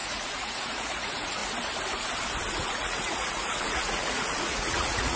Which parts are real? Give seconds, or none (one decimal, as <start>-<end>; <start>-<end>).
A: 1.4-2.6